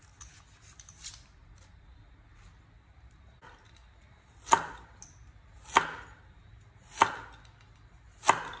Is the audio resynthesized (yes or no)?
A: no